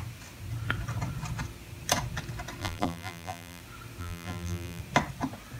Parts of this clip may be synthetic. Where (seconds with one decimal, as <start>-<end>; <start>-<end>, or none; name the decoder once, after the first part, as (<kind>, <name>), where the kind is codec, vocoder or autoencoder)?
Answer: 2.6-3.6 (vocoder, BigVGAN v2); 4.0-4.8